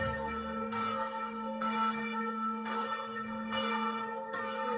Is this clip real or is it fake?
fake